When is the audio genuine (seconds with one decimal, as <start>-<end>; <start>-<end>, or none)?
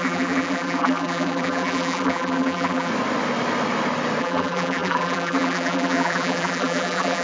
2.9-4.2